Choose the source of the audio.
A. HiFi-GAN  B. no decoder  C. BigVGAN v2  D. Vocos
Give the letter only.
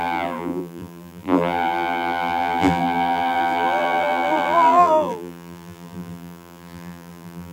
C